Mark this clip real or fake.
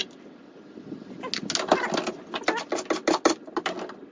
real